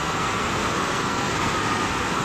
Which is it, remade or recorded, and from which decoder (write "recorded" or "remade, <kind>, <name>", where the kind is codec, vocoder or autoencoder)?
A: remade, codec, SNAC